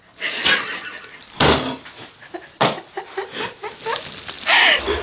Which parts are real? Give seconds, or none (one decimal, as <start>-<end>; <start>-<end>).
0.0-5.0